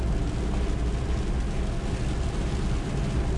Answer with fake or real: real